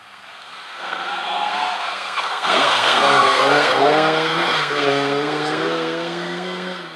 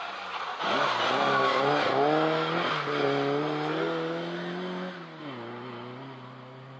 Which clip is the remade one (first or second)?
first